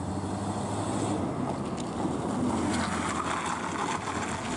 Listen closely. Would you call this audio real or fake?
real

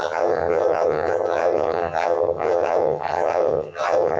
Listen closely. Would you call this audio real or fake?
fake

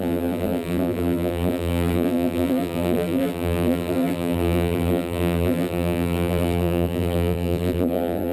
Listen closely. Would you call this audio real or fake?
fake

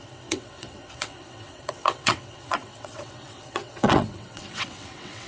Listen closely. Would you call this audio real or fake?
fake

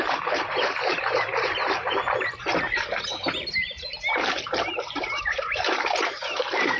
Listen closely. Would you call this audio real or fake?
fake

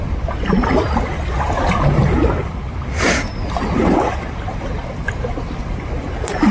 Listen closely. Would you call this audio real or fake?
real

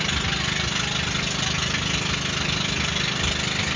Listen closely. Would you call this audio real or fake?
real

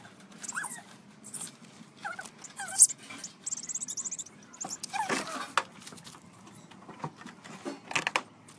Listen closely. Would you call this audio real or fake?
real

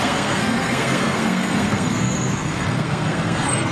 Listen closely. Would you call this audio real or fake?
fake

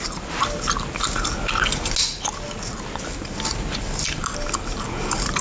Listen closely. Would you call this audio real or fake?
real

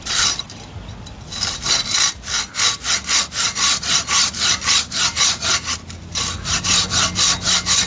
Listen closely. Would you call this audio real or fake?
real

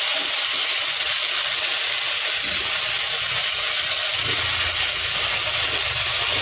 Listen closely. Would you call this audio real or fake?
real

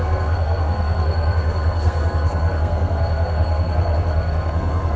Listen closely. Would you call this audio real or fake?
fake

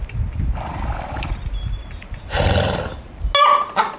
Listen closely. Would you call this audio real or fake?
real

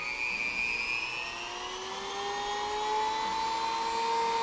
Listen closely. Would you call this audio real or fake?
real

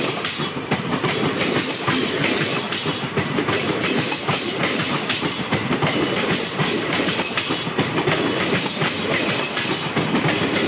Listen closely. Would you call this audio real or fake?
real